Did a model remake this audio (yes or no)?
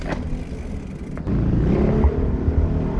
no